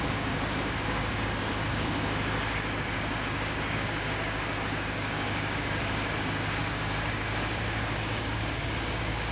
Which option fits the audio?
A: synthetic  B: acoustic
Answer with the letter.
A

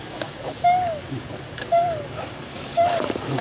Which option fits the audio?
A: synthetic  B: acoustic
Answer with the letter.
A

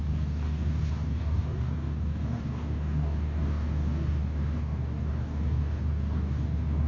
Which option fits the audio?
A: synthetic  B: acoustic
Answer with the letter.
A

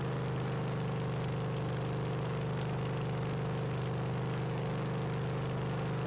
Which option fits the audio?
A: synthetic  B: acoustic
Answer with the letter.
B